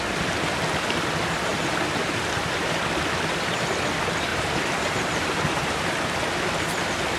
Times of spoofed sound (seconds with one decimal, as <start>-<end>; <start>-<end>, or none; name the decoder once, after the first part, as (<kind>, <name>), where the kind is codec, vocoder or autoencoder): 4.3-5.9 (vocoder, BigVGAN v2)